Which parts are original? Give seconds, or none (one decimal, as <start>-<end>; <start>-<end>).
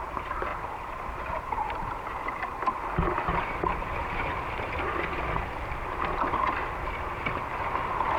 0.0-8.2